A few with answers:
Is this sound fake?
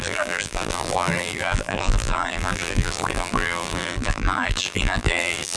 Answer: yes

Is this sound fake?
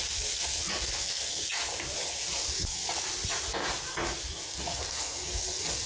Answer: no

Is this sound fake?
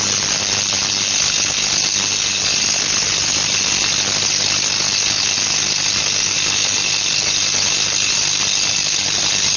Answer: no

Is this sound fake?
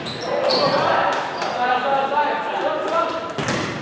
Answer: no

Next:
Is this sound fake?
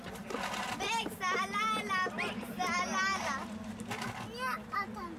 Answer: no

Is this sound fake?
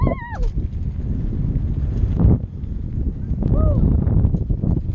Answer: yes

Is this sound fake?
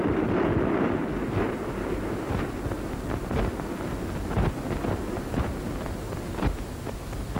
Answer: no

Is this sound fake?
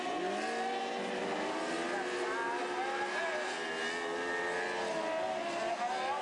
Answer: no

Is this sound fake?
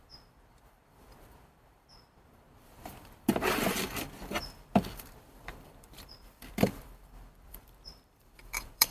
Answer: yes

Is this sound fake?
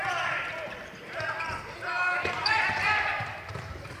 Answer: no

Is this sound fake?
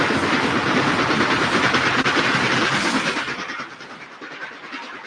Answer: no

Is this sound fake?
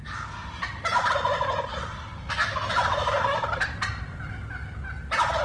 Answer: yes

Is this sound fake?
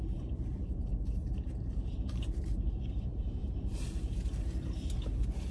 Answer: yes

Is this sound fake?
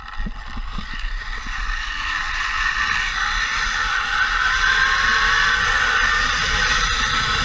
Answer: yes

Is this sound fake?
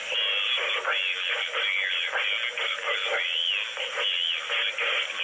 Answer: no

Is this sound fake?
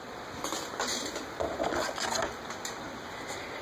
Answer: no